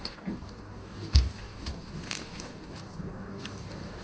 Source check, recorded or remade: remade